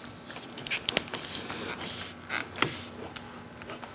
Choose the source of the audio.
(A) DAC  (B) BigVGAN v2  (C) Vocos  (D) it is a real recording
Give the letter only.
D